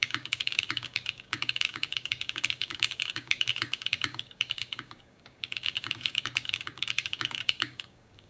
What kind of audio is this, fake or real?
fake